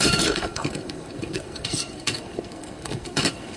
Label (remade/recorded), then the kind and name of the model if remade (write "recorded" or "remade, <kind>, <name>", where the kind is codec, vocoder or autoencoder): remade, codec, SNAC